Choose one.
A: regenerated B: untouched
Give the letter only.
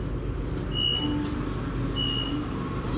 B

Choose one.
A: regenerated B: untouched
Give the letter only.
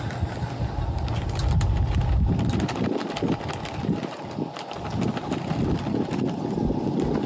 B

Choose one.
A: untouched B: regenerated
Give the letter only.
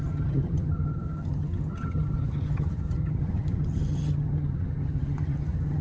B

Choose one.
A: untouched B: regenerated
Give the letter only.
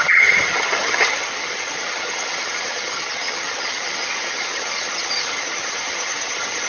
B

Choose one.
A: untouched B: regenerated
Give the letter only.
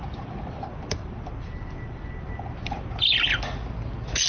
A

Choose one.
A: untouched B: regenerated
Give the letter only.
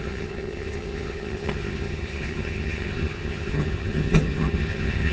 B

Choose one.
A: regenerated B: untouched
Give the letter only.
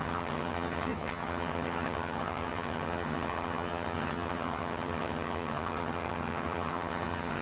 A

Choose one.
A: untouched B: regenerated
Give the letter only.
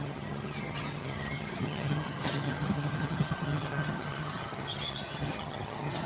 B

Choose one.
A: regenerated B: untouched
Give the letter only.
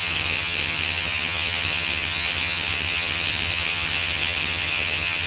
A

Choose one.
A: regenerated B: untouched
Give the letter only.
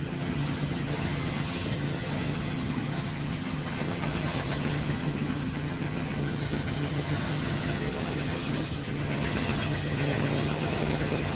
A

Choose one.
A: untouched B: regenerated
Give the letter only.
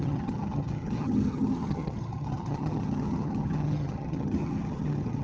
B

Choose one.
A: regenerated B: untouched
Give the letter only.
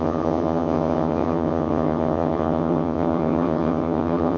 A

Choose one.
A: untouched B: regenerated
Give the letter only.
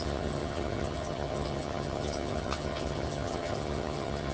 B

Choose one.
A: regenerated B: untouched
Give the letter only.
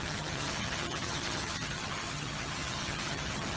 A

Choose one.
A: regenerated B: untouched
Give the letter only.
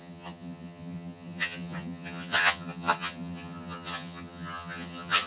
A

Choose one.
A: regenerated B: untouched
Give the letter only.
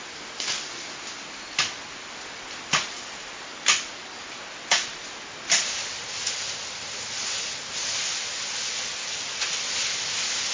B